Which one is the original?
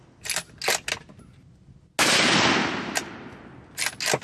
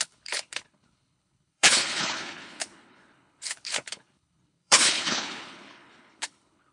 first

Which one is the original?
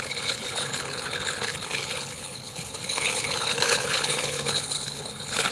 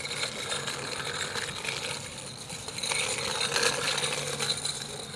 second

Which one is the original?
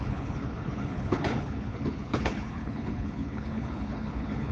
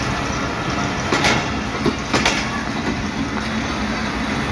second